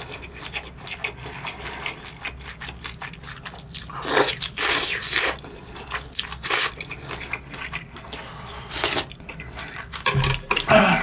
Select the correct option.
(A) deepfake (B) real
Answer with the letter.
B